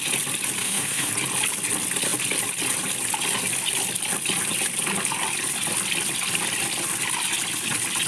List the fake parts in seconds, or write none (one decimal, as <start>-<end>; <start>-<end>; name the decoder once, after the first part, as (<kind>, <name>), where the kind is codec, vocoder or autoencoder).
0.6-1.1 (autoencoder, DAC-VAE)